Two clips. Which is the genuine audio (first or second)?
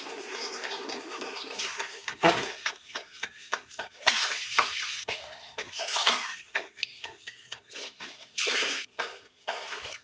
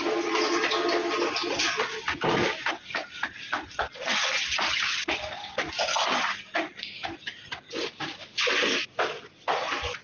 second